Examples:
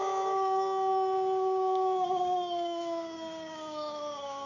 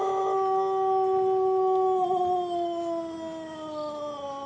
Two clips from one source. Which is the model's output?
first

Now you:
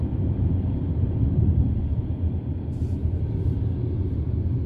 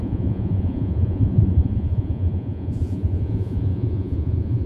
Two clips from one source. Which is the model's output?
second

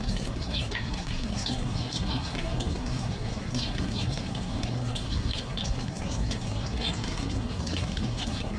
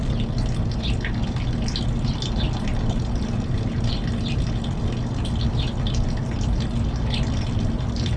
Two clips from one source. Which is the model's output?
first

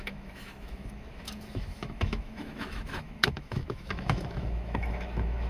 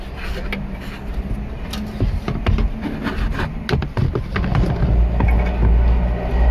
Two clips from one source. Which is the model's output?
first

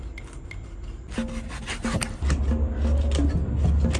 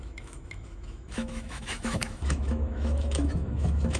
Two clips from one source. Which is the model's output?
second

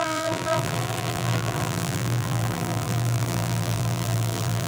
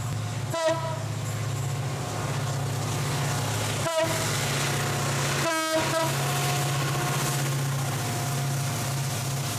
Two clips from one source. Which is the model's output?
first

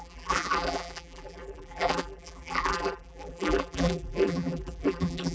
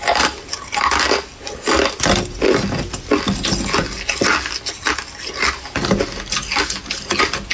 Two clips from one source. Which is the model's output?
first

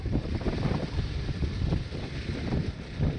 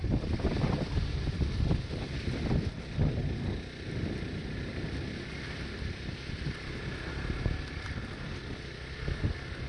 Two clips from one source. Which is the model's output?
first